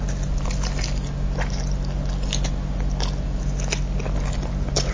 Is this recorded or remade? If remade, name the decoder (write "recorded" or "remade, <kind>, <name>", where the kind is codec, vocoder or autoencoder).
recorded